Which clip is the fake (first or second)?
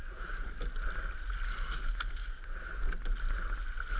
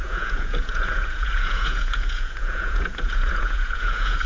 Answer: second